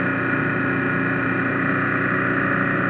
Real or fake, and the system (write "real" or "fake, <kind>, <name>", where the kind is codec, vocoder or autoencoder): real